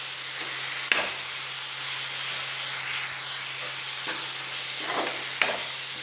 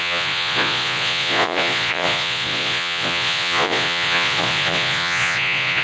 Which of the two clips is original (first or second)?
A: first